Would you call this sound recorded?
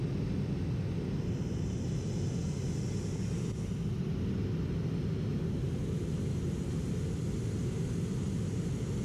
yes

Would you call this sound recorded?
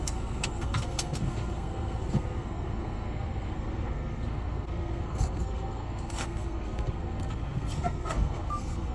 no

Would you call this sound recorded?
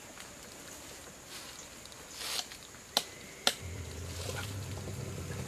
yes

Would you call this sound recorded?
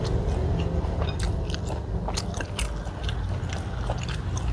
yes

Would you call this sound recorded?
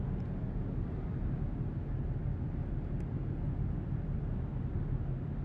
yes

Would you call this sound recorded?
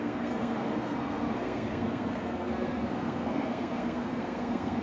no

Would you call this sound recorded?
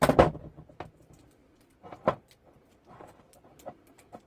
yes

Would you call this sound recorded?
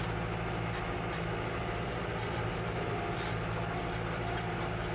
yes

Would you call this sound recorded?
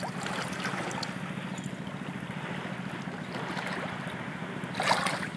yes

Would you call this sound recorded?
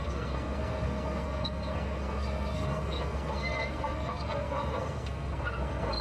no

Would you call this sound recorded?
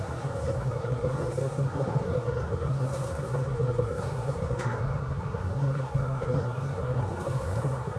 no